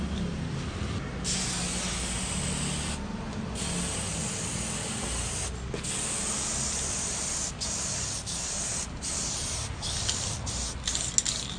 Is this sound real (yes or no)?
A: yes